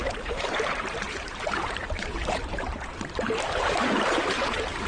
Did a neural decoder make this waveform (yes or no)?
yes